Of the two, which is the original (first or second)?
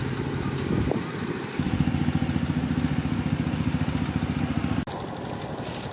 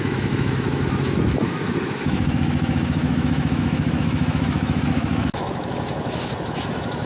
first